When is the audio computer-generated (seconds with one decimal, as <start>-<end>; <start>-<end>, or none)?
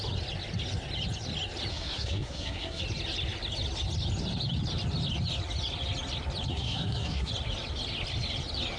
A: 1.7-2.8; 6.5-7.3